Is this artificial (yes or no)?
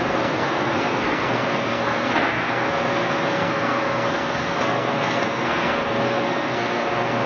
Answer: yes